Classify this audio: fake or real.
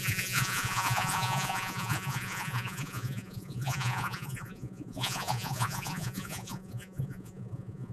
fake